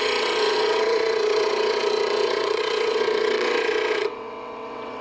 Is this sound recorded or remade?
remade